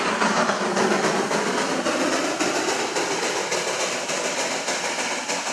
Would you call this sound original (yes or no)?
yes